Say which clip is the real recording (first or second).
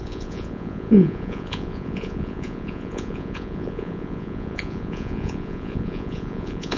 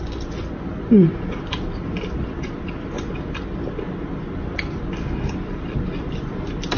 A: second